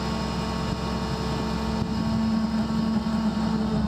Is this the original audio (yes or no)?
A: yes